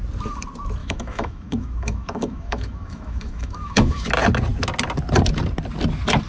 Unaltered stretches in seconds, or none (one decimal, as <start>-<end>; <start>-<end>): 0.0-0.8; 4.1-6.3